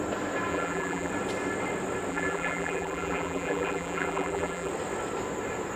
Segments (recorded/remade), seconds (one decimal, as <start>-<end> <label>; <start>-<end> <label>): 0.0-0.5 recorded; 0.5-1.1 remade; 1.1-2.1 recorded; 2.1-4.7 remade; 4.7-5.8 recorded